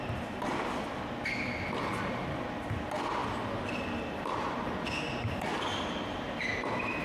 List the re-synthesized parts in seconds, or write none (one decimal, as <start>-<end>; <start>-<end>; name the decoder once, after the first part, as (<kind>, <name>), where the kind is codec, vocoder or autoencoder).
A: none